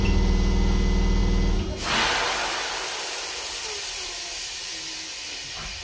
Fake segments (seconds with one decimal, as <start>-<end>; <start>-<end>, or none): none